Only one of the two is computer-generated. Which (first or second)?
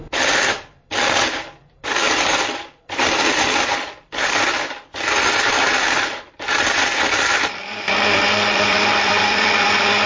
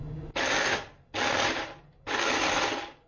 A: first